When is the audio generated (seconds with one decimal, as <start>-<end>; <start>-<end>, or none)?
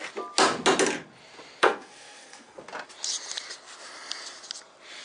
1.6-2.6